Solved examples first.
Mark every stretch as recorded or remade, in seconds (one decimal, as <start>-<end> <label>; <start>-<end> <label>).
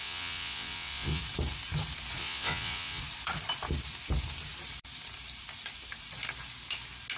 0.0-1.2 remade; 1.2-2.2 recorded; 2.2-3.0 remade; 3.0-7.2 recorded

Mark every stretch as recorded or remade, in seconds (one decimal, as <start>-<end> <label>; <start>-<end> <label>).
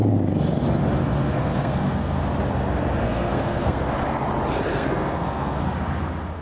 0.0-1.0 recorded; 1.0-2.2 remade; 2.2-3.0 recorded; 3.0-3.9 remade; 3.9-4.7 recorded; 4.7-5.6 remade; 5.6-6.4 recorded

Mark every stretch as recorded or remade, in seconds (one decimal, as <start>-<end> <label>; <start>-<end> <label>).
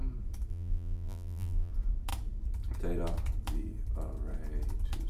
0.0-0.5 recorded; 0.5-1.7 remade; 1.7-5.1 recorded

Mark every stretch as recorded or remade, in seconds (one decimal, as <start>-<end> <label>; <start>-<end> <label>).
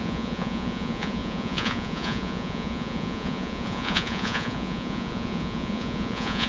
0.0-6.5 remade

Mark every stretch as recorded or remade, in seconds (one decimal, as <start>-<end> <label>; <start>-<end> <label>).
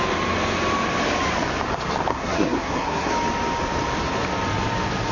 0.0-2.1 recorded; 2.1-3.1 remade; 3.1-5.1 recorded